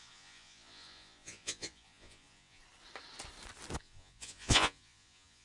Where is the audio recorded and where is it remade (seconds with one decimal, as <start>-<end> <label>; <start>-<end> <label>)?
0.0-2.6 remade; 2.6-3.8 recorded; 3.8-5.4 remade